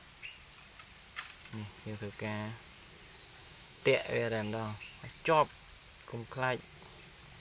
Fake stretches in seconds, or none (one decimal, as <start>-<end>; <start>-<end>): 3.4-5.0